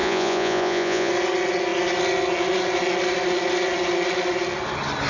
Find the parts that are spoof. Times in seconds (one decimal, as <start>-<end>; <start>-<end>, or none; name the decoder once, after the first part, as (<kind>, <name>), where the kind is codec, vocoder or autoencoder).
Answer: 0.0-1.1 (vocoder, Vocos)